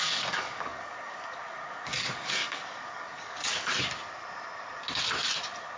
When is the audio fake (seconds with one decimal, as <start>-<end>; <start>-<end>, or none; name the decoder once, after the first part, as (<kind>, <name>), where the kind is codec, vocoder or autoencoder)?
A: 0.0-3.7 (codec, DAC)